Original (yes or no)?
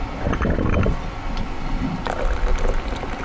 yes